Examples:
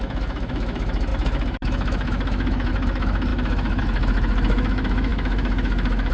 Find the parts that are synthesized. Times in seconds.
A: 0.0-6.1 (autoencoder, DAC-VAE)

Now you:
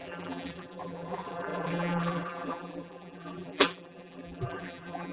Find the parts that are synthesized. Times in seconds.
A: 0.0-5.1 (vocoder, BigVGAN v2)